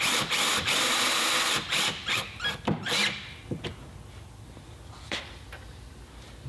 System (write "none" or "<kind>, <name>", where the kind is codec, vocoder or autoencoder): none